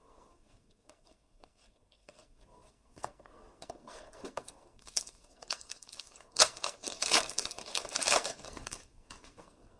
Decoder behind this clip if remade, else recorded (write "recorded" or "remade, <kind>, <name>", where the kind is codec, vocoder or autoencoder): remade, codec, SNAC